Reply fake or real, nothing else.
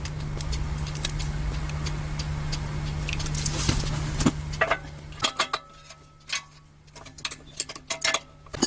real